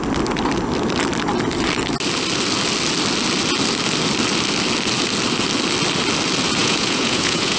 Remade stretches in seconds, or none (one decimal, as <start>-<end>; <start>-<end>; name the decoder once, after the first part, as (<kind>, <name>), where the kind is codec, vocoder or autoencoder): 6.6-7.6 (vocoder, Vocos)